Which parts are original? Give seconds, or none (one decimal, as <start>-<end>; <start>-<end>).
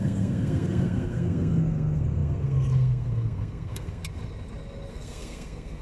4.0-4.9